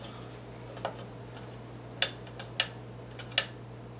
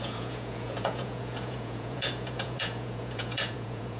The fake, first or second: second